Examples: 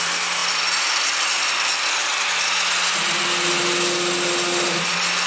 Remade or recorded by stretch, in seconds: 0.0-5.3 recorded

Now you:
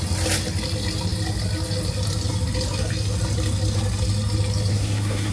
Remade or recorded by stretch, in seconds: 0.0-4.7 recorded; 4.7-5.3 remade

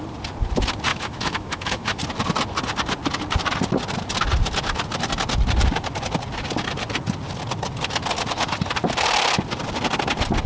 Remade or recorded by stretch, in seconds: 0.0-0.9 recorded; 0.9-2.0 remade; 2.0-10.5 recorded

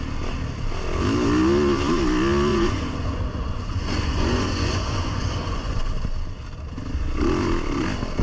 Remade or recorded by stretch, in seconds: 0.0-2.5 recorded; 2.5-5.9 remade; 5.9-8.2 recorded

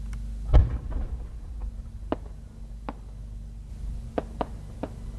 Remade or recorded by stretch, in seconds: 0.0-5.2 recorded